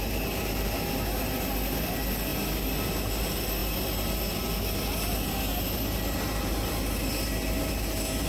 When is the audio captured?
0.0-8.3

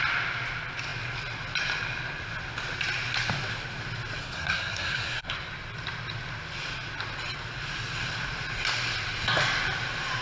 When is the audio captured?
0.0-4.2; 5.5-10.2